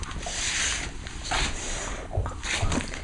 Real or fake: real